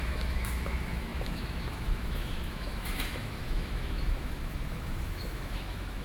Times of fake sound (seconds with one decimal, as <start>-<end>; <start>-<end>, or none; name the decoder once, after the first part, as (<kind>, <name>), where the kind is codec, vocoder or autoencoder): 0.0-6.0 (autoencoder, DAC-VAE)